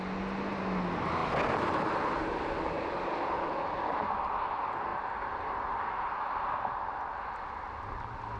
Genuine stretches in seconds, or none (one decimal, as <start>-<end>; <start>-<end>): 0.0-8.4

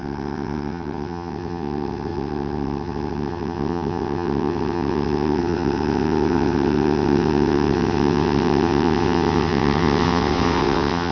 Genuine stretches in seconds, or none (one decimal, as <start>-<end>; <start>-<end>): none

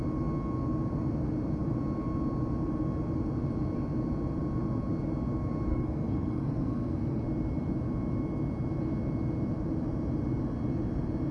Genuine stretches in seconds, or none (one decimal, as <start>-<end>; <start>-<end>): 0.0-5.7; 7.2-11.3

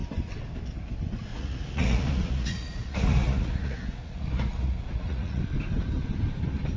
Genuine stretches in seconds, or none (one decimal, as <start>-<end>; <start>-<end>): 0.0-1.3; 5.4-6.8